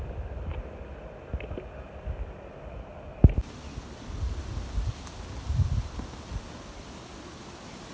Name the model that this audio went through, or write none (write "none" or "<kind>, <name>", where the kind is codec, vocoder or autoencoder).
none